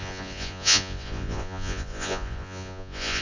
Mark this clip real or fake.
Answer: fake